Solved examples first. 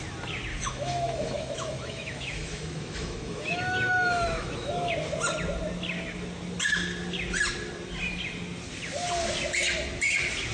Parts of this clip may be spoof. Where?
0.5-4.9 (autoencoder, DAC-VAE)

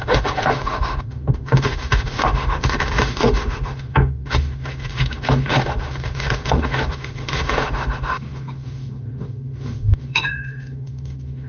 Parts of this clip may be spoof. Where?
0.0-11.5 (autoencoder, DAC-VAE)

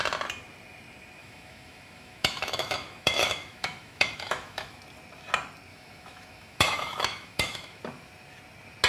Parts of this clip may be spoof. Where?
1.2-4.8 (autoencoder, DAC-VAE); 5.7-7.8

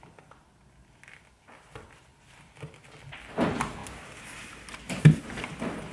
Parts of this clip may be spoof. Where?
none

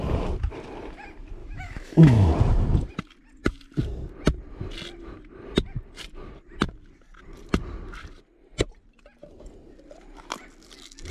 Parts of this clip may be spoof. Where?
1.4-2.3 (autoencoder, DAC-VAE)

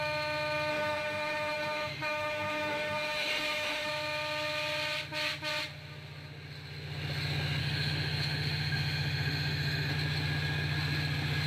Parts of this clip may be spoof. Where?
0.7-3.9 (autoencoder, DAC-VAE); 7.6-9.9

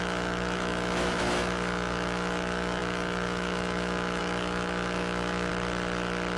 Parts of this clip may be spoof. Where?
0.0-5.5 (autoencoder, DAC-VAE)